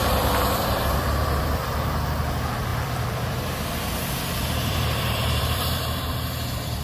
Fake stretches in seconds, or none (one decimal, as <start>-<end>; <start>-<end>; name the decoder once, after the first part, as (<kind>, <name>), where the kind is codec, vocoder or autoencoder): 0.0-1.4 (vocoder, BigVGAN v2); 2.7-6.0